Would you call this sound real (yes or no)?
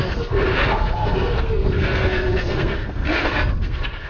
no